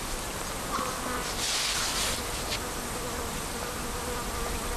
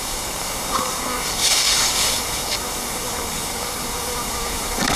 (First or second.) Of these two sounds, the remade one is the second